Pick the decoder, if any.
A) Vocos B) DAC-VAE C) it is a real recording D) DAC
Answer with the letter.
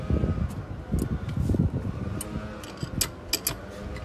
C